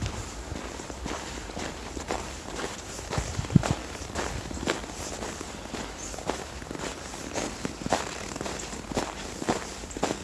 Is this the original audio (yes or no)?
no